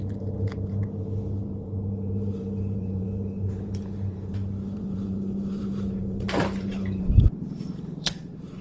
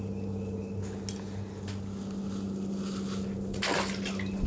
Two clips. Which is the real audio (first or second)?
second